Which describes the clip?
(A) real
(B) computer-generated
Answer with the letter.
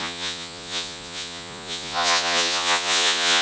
B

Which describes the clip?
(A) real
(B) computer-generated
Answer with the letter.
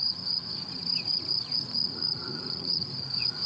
B